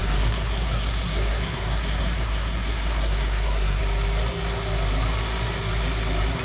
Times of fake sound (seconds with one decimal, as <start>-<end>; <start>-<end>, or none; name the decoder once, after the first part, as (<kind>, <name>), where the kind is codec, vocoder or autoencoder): 0.0-3.8 (codec, SNAC)

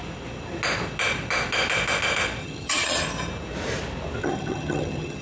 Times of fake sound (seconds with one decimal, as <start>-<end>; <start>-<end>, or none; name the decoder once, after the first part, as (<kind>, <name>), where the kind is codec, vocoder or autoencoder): 2.4-3.0 (vocoder, HiFi-GAN); 4.2-5.2

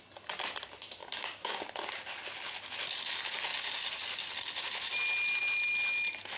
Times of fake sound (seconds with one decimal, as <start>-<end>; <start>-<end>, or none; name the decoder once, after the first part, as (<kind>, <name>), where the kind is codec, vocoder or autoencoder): 1.0-1.7 (codec, DAC)

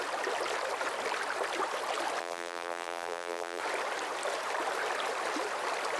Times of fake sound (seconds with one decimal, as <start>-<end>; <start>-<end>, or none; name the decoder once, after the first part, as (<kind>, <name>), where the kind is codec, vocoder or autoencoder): 2.2-3.6 (vocoder, BigVGAN v2)

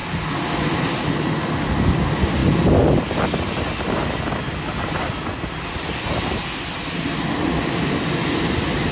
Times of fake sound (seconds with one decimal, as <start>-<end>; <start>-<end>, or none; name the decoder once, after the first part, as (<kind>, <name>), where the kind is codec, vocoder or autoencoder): none

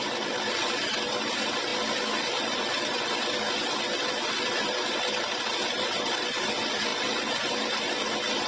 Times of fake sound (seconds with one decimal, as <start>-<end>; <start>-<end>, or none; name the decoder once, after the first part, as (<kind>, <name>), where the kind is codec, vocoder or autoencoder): none

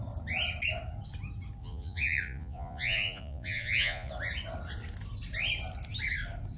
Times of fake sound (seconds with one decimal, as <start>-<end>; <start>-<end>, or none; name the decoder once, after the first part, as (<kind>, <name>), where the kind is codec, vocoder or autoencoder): 1.6-4.1 (vocoder, Vocos)

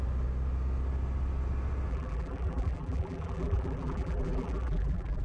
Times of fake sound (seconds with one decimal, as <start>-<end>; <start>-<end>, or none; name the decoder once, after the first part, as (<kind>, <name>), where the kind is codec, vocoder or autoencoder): 1.9-5.2 (vocoder, BigVGAN v2)